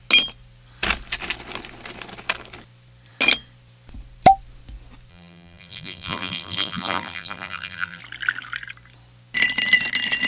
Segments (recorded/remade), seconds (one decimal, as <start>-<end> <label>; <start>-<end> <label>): 0.0-5.1 recorded; 5.1-8.0 remade; 8.0-10.3 recorded